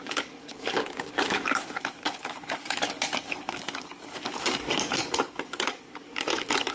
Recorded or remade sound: remade